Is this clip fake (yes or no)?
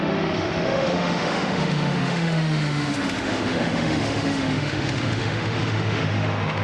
yes